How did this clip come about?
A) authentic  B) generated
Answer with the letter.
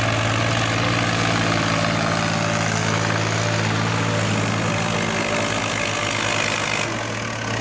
A